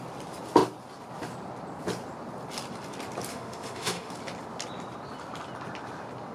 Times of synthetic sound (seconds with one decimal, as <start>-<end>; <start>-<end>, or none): 3.3-4.1